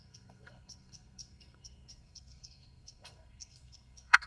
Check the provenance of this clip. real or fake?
fake